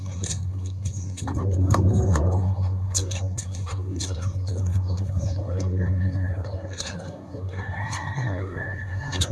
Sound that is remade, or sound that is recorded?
remade